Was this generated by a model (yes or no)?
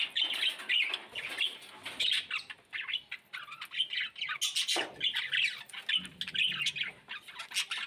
no